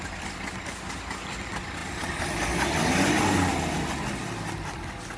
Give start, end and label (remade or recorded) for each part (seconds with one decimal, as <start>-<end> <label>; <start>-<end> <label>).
0.0-5.2 recorded